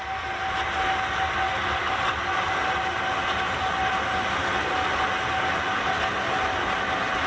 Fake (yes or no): no